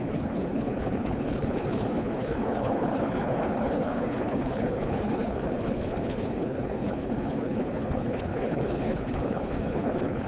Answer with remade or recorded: remade